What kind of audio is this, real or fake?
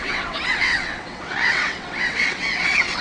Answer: fake